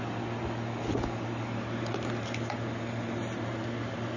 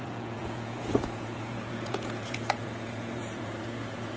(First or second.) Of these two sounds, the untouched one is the first